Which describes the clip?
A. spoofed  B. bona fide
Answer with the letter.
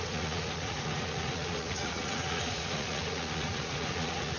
A